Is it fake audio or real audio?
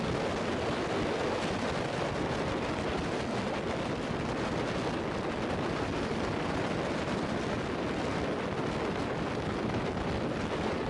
real